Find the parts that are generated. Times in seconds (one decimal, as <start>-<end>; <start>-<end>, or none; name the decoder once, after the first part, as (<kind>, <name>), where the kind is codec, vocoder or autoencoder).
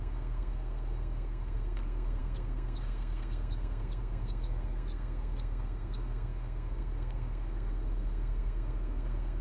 0.0-9.4 (codec, SNAC)